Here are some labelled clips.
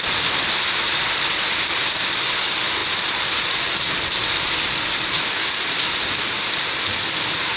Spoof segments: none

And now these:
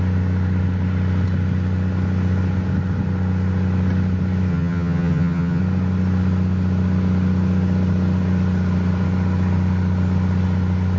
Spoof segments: 4.5-5.6 (vocoder, HiFi-GAN)

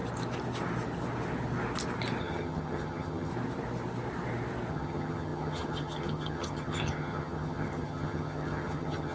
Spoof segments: 2.2-3.3 (vocoder, HiFi-GAN); 4.7-9.1

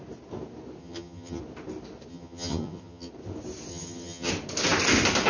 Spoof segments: 0.8-1.4 (vocoder, HiFi-GAN); 2.1-3.1; 3.7-4.3

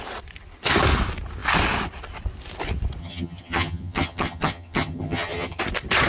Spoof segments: 3.0-5.6 (vocoder, HiFi-GAN)

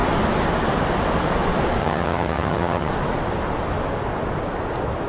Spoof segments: 1.8-2.9 (vocoder, HiFi-GAN)

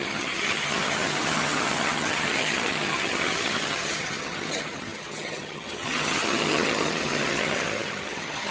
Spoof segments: 0.0-8.5 (vocoder, HiFi-GAN)